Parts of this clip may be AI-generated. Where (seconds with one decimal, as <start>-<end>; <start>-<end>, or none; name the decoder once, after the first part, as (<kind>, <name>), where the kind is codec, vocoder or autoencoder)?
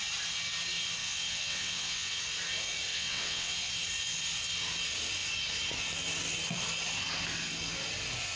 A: 1.0-2.2 (vocoder, WaveNeXt); 2.9-3.7